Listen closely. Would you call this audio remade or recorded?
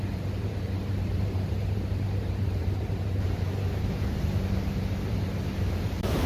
remade